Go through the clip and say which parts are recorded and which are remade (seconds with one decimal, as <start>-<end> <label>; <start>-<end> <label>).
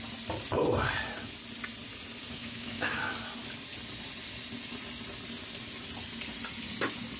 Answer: 0.0-2.4 recorded; 2.4-3.0 remade; 3.0-7.2 recorded